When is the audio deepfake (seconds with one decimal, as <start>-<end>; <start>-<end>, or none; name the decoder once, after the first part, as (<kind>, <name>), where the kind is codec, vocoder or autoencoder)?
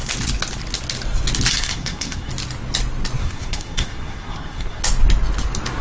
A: 1.5-2.3 (codec, SNAC); 3.2-4.8